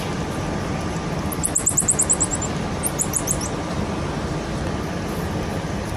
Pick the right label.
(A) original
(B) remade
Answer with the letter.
A